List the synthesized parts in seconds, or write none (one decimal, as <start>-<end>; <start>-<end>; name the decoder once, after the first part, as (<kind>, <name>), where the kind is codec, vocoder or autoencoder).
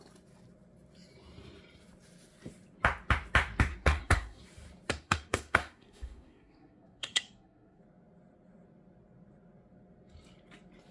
3.7-4.4 (codec, SNAC); 4.9-7.8